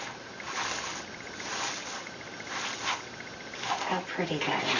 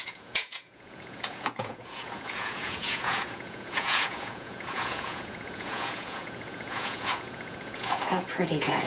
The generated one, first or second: second